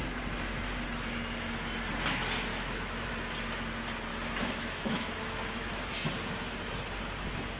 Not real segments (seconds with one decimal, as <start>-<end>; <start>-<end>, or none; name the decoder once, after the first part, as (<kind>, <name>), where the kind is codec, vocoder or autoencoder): 2.5-3.1 (autoencoder, DAC-VAE); 4.1-5.9